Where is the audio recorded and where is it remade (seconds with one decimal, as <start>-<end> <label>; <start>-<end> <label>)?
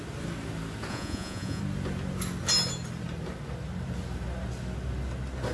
0.0-0.9 recorded; 0.9-1.6 remade; 1.6-5.5 recorded